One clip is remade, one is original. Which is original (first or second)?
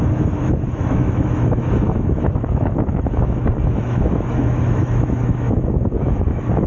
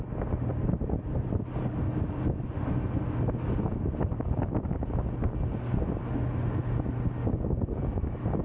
second